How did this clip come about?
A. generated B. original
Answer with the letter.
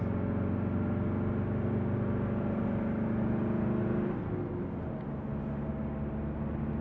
B